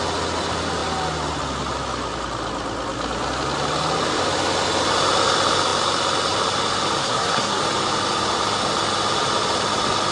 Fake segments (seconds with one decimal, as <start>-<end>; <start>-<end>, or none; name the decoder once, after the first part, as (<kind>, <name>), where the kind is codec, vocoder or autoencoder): 7.0-7.6 (codec, SNAC)